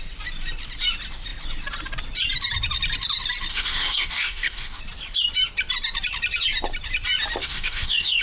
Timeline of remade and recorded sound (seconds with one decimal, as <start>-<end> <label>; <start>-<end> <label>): 0.0-3.5 recorded; 3.5-4.8 remade; 4.8-7.4 recorded; 7.4-8.2 remade